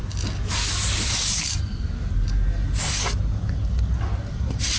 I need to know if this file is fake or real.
real